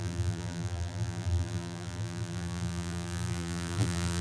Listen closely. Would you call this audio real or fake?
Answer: fake